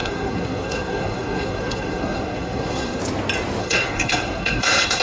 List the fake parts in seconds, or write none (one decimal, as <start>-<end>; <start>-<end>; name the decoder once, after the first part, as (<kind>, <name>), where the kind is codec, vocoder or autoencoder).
0.0-3.0 (codec, SNAC); 3.6-5.0